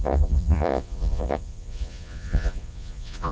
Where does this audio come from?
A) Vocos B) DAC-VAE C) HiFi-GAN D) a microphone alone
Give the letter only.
A